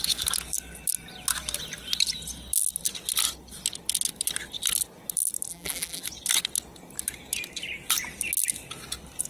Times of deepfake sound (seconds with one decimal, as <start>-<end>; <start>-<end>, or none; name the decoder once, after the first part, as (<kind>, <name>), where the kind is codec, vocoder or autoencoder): 5.5-6.0 (vocoder, BigVGAN v2)